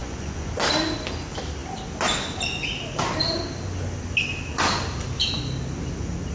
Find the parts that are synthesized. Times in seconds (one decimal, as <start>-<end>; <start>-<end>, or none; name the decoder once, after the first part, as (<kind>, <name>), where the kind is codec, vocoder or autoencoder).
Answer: 0.0-0.5 (vocoder, Vocos)